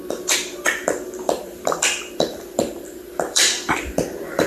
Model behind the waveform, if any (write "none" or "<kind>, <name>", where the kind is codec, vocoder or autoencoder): vocoder, BigVGAN v2